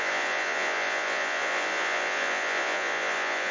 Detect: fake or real fake